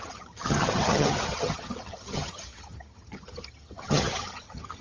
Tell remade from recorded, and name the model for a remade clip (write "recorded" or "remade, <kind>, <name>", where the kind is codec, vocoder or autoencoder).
remade, vocoder, HiFi-GAN